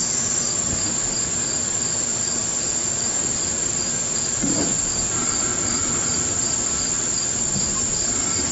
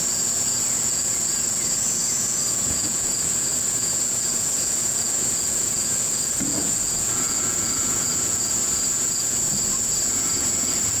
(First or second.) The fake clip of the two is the second